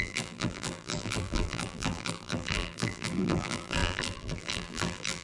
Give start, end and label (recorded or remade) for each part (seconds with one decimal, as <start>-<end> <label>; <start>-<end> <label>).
0.0-5.2 remade